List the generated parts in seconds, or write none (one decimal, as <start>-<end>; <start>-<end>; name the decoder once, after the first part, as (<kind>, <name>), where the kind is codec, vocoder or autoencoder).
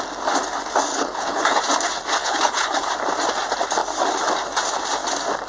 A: 0.9-1.6 (codec, HILCodec); 2.2-2.9